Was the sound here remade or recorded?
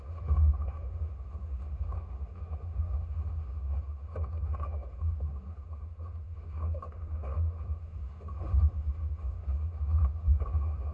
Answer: remade